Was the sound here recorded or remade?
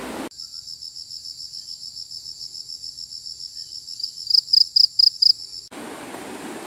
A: recorded